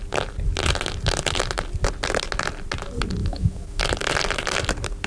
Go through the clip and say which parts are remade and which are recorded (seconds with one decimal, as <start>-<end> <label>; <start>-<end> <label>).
0.0-3.2 recorded; 3.2-3.8 remade; 3.8-5.1 recorded